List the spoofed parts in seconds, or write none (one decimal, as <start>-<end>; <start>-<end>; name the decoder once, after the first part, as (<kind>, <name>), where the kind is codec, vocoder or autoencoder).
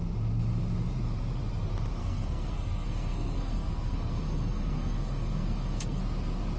2.0-6.0 (codec, SNAC)